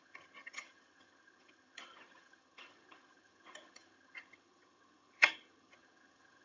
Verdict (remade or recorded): remade